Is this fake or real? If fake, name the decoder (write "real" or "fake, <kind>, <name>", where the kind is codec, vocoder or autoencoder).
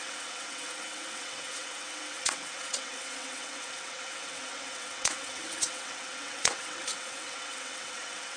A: fake, vocoder, WaveNeXt